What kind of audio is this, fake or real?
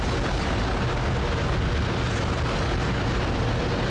real